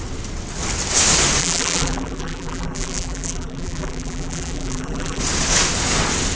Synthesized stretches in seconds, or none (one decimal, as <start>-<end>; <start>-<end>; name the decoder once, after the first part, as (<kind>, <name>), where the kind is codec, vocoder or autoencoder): 1.4-5.2 (vocoder, BigVGAN v2)